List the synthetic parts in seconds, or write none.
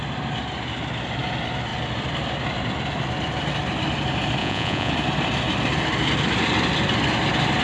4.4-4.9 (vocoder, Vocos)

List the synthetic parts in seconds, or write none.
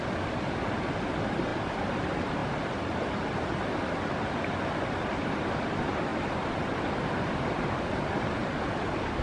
0.0-6.1 (vocoder, BigVGAN v2); 8.7-9.2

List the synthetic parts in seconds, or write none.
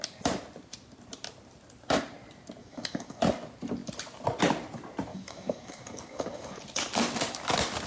2.6-3.2 (codec, DAC); 5.1-6.6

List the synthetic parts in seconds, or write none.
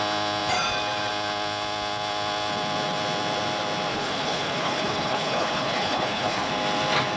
3.9-6.5 (codec, HILCodec)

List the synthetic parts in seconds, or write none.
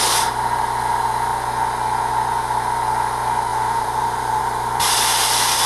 3.5-4.4 (vocoder, BigVGAN v2)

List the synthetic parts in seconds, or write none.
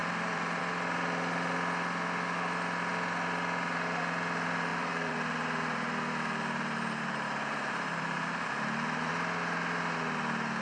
0.0-0.6 (vocoder, BigVGAN v2); 4.7-9.1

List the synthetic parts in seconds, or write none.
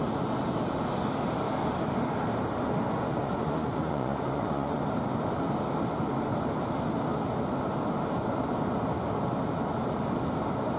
3.2-4.8 (vocoder, Vocos)